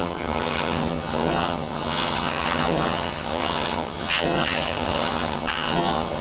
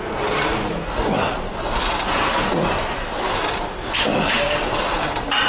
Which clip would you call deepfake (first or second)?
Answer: first